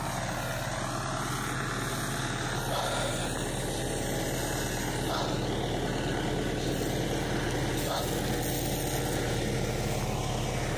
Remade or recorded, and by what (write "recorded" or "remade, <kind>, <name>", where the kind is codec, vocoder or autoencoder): recorded